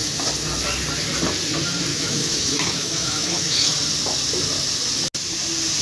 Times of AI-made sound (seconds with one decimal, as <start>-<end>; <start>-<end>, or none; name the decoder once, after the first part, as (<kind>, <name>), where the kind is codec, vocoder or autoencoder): 1.9-3.7 (autoencoder, DAC-VAE)